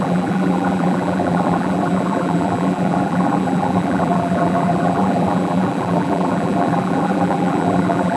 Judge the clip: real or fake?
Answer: fake